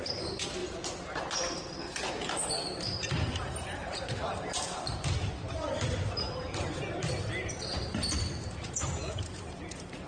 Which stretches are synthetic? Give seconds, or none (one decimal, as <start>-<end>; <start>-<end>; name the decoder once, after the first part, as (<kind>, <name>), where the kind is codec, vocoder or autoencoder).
0.0-0.6 (vocoder, BigVGAN v2); 2.1-10.1